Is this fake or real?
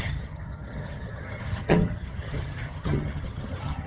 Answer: fake